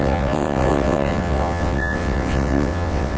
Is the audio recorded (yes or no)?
no